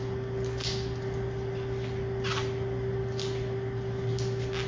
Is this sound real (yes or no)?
yes